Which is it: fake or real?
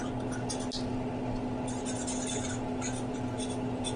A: real